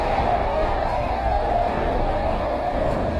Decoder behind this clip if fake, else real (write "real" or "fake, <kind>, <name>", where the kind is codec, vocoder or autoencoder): fake, codec, DAC